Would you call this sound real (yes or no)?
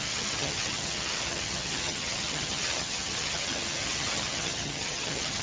no